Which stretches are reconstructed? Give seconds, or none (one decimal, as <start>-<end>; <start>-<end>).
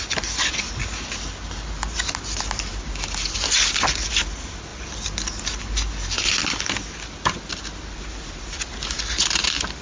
none